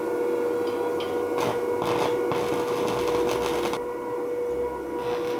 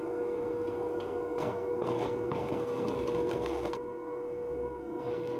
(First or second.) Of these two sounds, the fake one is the second